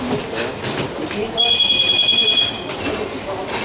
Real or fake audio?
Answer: real